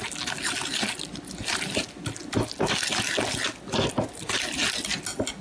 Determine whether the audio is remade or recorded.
recorded